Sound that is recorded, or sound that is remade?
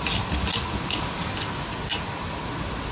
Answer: recorded